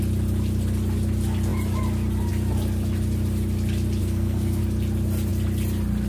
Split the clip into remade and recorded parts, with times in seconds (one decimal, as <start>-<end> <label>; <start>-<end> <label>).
0.0-4.0 recorded; 4.0-4.6 remade; 4.6-6.1 recorded